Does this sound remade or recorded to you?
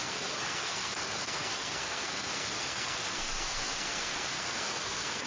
remade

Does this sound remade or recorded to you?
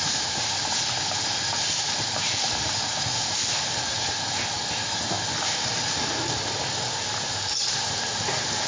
remade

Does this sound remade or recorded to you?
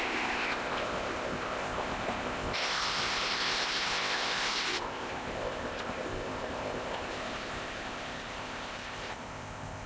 remade